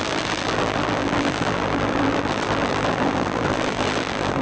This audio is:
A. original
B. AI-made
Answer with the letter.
B